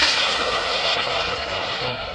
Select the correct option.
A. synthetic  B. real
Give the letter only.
A